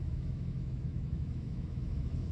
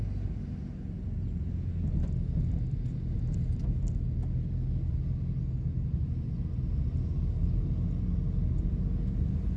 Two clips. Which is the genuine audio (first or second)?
second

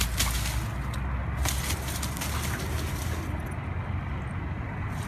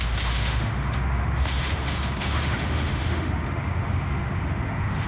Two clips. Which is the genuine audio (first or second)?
first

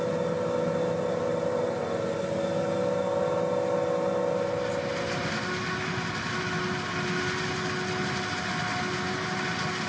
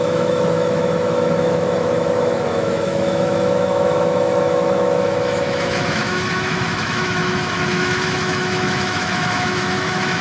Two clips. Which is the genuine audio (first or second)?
first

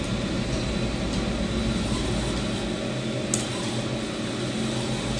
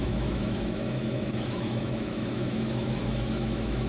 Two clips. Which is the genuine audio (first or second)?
first